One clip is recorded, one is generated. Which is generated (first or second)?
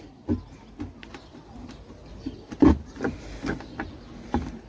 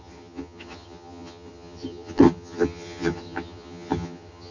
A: second